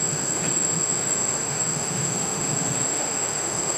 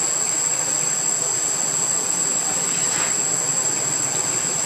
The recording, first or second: second